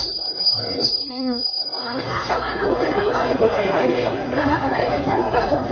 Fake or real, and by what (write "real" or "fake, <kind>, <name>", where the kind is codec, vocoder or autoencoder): fake, codec, SNAC